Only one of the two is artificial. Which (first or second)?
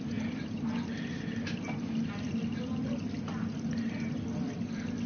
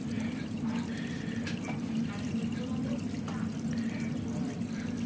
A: second